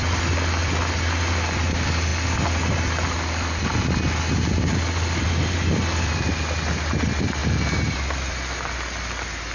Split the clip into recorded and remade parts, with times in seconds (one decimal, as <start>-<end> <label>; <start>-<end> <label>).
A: 0.0-9.5 recorded